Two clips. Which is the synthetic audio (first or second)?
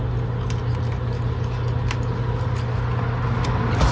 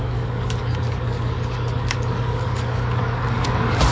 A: second